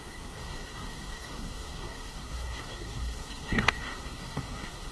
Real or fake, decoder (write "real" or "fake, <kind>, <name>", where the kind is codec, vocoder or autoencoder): fake, codec, SNAC